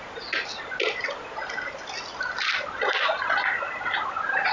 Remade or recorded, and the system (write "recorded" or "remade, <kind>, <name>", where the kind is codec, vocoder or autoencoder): recorded